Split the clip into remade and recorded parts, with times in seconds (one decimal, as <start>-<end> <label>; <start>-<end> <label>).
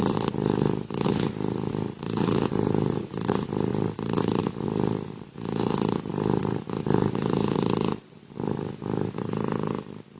0.0-10.2 remade